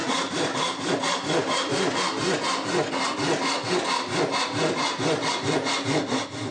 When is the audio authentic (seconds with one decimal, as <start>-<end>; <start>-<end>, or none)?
0.9-6.5